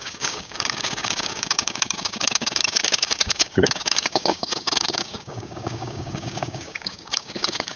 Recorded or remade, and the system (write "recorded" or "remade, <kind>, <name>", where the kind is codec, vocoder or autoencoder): remade, codec, DAC